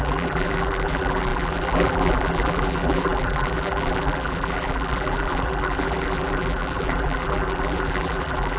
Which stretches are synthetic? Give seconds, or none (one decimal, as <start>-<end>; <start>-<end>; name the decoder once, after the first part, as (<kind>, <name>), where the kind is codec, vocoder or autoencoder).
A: 0.0-8.6 (vocoder, BigVGAN v2)